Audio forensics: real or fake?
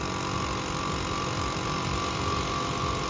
real